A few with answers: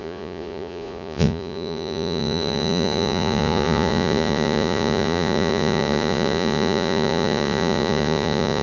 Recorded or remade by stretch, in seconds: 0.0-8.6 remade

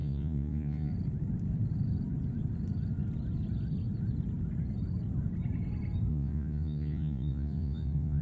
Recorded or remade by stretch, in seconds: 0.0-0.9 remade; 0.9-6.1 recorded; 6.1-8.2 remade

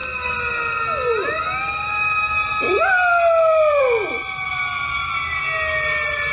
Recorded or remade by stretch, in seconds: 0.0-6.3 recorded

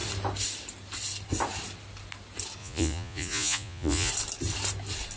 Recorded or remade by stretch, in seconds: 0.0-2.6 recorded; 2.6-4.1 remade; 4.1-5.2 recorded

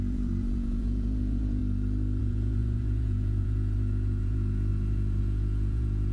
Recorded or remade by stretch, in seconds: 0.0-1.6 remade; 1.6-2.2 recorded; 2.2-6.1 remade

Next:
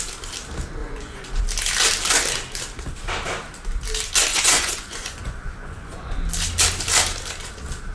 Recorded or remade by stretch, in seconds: 0.0-0.8 recorded; 0.8-1.4 remade; 1.4-4.3 recorded; 4.3-6.1 remade; 6.1-7.9 recorded